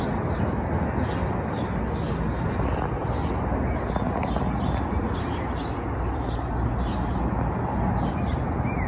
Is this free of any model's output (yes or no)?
yes